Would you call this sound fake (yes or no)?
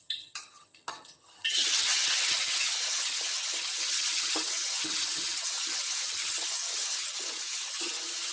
yes